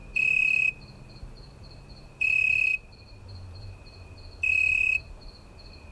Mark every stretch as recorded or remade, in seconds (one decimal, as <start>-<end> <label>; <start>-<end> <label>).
0.0-5.9 remade